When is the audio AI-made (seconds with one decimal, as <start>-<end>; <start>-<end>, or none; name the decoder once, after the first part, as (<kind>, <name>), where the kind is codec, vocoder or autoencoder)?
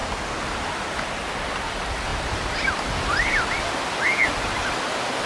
none